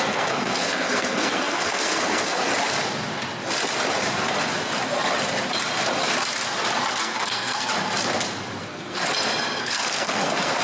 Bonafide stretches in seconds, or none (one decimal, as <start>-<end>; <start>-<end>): 2.5-6.9; 7.7-8.6; 9.0-9.6